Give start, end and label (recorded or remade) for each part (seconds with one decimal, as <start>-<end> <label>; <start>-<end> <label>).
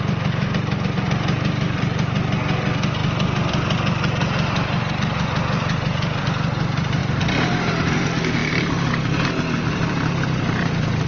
0.0-11.1 recorded